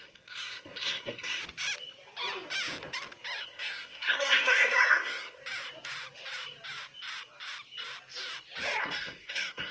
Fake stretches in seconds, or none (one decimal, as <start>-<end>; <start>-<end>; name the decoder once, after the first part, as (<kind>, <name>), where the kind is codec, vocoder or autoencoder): 0.0-1.4 (codec, SNAC); 3.4-5.4; 8.8-9.7